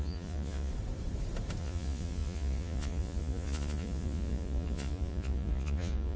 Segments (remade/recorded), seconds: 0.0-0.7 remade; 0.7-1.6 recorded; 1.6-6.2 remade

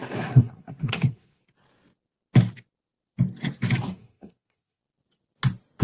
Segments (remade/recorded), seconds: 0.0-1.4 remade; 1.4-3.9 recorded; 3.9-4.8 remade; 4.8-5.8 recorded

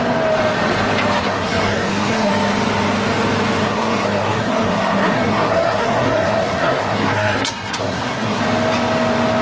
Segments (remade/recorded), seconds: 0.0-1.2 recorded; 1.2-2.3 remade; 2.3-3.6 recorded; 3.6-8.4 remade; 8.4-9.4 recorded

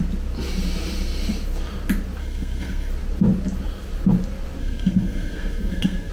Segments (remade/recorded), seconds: 0.0-2.2 recorded; 2.2-2.9 remade; 2.9-4.6 recorded; 4.6-6.1 remade

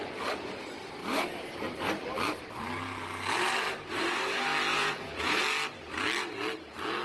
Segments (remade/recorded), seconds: 0.0-4.7 recorded; 4.7-5.4 remade; 5.4-7.0 recorded

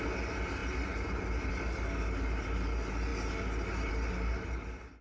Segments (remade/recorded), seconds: 0.0-5.0 recorded

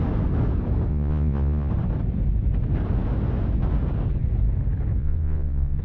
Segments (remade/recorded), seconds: 0.0-0.9 recorded; 0.9-1.7 remade; 1.7-5.0 recorded; 5.0-5.8 remade

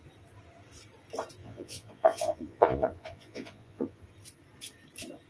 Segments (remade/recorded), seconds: 0.0-1.4 recorded; 1.4-4.0 remade; 4.0-5.3 recorded